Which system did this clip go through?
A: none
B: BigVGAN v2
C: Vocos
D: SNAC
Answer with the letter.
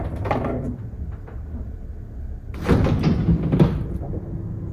A